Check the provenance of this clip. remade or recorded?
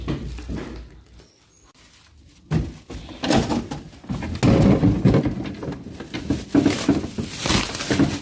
recorded